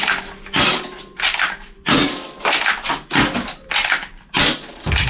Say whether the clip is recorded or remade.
remade